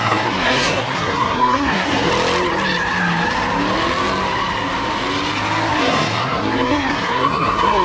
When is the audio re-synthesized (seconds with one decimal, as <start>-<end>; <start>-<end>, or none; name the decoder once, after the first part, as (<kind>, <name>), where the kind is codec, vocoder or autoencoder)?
0.0-2.1 (codec, SNAC); 5.8-7.8